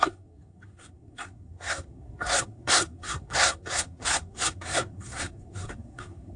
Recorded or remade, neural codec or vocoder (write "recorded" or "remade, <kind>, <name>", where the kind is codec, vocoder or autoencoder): remade, codec, SNAC